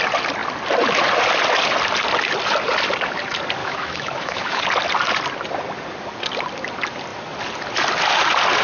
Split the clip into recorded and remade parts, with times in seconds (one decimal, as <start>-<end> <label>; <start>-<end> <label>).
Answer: 0.0-3.6 recorded; 3.6-4.6 remade; 4.6-8.6 recorded